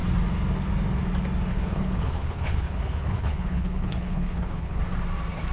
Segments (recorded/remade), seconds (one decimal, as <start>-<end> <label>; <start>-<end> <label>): 0.0-1.5 recorded; 1.5-4.8 remade; 4.8-5.5 recorded